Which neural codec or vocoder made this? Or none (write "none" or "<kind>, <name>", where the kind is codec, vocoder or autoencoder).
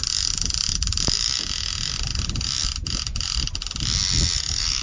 none